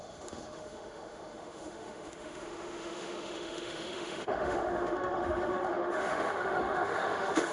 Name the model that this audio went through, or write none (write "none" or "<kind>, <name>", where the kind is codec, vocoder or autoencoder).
autoencoder, DAC-VAE